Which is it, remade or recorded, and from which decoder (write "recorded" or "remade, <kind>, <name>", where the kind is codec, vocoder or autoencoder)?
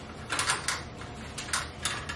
recorded